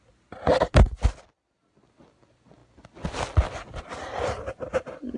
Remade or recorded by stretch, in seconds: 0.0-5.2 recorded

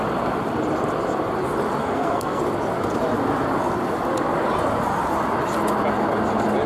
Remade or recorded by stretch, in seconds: 0.0-1.8 recorded; 1.8-2.4 remade; 2.4-6.7 recorded

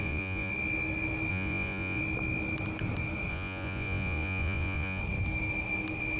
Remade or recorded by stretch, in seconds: 0.0-0.5 remade; 0.5-1.3 recorded; 1.3-2.0 remade; 2.0-3.3 recorded; 3.3-5.0 remade; 5.0-6.2 recorded

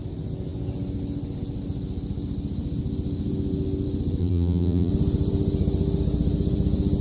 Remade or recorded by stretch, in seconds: 0.0-4.2 recorded; 4.2-4.9 remade; 4.9-7.0 recorded